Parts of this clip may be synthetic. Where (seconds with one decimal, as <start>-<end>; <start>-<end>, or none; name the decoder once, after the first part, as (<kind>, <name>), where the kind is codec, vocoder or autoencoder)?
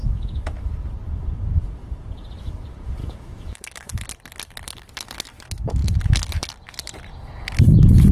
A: 0.0-0.7 (autoencoder, DAC-VAE); 3.0-3.9